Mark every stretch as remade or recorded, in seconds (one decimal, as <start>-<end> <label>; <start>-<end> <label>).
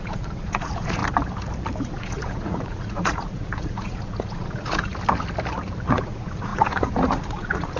0.0-1.0 remade; 1.0-1.8 recorded; 1.8-4.9 remade; 4.9-5.9 recorded; 5.9-7.8 remade